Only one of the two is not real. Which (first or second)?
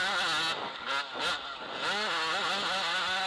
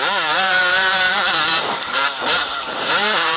second